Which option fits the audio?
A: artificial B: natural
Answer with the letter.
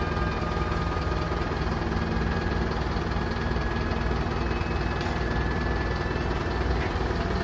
B